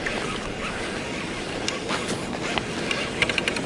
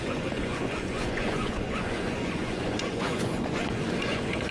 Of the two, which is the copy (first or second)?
second